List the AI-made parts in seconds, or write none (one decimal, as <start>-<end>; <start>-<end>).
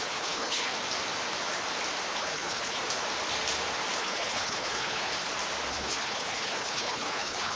0.0-0.7; 2.2-2.8; 4.0-5.1; 5.7-7.6